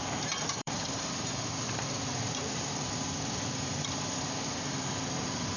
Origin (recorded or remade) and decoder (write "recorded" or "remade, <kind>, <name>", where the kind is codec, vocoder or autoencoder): remade, vocoder, BigVGAN v2